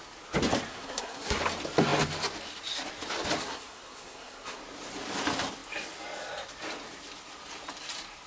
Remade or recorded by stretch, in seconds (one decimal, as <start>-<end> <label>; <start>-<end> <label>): 0.0-0.7 recorded; 0.7-1.4 remade; 1.4-3.4 recorded; 3.4-4.6 remade; 4.6-8.3 recorded